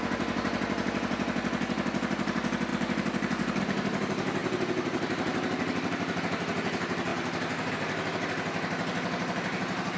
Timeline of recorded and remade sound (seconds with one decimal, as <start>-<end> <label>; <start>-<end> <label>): 0.0-2.7 recorded; 2.7-3.6 remade; 3.6-4.4 recorded; 4.4-6.2 remade; 6.2-7.1 recorded; 7.1-7.7 remade; 7.7-10.0 recorded